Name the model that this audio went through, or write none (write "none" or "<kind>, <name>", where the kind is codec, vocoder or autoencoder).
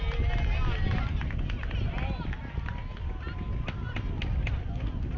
none